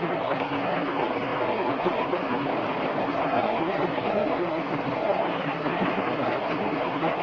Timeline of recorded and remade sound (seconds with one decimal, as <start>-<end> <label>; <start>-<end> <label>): 0.0-2.5 remade; 2.5-3.0 recorded; 3.0-7.2 remade